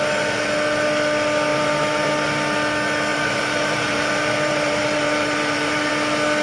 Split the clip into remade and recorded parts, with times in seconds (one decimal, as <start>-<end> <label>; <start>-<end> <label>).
0.0-1.5 recorded; 1.5-2.1 remade; 2.1-3.1 recorded; 3.1-5.9 remade; 5.9-6.4 recorded